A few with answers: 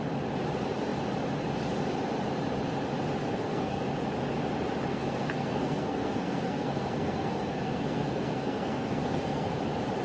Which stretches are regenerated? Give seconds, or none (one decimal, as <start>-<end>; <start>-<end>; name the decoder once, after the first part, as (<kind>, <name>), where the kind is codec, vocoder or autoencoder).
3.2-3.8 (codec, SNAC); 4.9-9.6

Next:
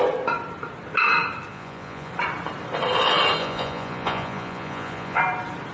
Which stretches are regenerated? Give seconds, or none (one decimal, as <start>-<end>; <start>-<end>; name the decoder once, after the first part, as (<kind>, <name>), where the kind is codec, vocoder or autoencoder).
1.5-2.1 (vocoder, Vocos); 3.4-5.2

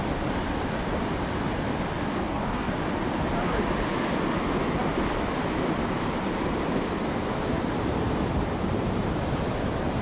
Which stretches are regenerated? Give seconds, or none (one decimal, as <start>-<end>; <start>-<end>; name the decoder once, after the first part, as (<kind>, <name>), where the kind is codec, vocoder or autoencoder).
2.2-2.7 (codec, DAC)